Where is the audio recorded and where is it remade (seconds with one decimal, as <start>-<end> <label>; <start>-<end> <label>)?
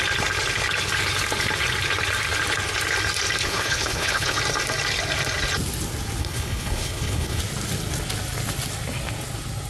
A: 0.0-3.4 recorded; 3.4-4.4 remade; 4.4-6.2 recorded; 6.2-7.4 remade; 7.4-9.7 recorded